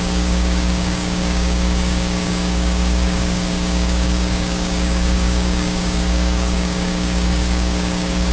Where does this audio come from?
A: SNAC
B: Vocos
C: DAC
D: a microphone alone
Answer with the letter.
C